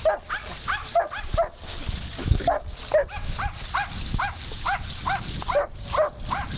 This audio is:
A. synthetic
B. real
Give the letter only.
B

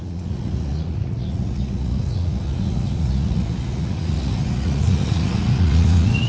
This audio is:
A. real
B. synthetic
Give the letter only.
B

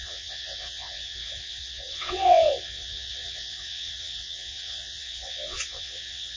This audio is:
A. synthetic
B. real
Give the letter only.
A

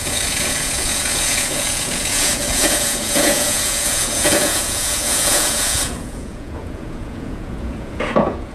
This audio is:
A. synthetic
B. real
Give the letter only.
A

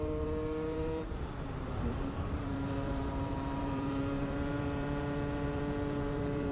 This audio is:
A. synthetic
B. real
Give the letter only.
A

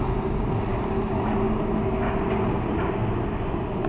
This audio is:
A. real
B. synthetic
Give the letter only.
A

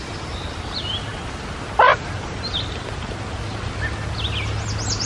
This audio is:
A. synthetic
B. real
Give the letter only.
B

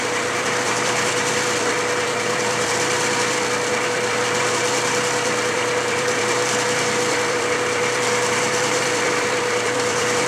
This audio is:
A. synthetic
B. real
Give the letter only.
A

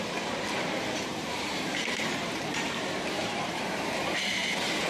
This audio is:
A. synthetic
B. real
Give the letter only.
A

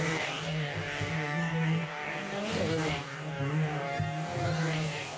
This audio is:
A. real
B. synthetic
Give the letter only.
B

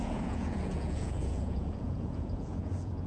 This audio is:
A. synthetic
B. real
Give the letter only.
A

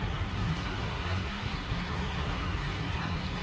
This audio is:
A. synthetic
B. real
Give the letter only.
A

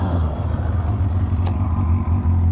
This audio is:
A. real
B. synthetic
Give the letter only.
A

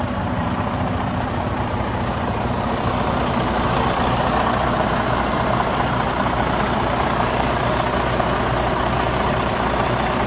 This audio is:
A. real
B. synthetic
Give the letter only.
B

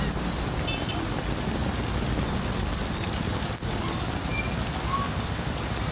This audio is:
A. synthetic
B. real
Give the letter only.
B